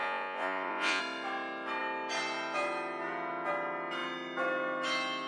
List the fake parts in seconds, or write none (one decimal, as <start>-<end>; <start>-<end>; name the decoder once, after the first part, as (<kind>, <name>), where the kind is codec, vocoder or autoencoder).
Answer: 0.0-1.0 (vocoder, Vocos)